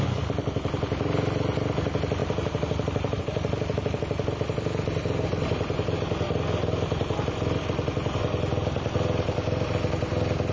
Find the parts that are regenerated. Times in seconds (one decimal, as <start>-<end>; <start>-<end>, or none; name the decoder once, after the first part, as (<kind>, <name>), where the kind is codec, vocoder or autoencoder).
none